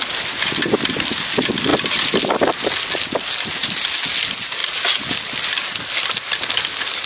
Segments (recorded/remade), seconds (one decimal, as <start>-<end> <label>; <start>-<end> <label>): 0.0-7.1 recorded